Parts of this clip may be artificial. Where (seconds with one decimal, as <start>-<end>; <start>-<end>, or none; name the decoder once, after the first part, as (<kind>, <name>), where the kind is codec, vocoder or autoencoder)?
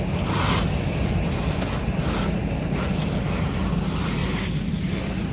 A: none